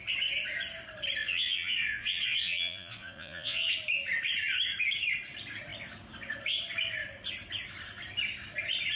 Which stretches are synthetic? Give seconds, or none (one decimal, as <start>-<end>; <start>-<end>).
1.2-3.7